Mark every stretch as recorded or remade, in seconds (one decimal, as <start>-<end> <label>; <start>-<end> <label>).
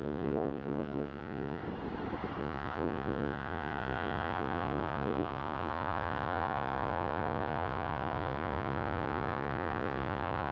0.0-1.6 remade; 1.6-2.4 recorded; 2.4-10.5 remade